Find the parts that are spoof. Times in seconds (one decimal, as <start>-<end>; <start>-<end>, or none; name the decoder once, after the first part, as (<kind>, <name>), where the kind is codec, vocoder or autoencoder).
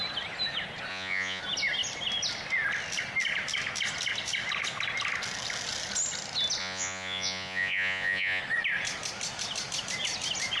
0.9-1.4 (vocoder, Vocos); 6.6-8.4